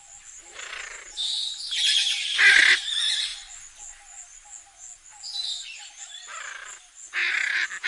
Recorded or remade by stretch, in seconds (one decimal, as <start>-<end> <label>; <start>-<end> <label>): 0.0-0.4 recorded; 0.4-1.4 remade; 1.4-7.2 recorded; 7.2-7.9 remade